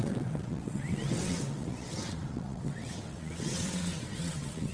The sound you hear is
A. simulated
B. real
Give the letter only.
A